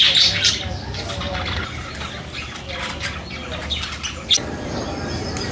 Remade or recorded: recorded